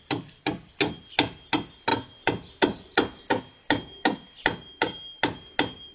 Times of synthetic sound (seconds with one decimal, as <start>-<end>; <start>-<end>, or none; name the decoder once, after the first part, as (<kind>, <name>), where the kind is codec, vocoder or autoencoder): none